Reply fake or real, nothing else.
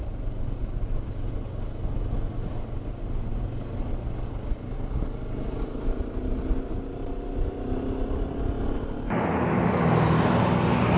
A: real